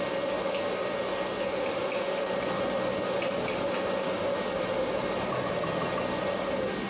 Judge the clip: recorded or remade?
recorded